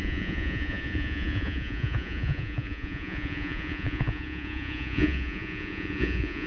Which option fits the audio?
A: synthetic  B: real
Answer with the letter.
A